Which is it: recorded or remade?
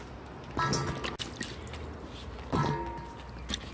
recorded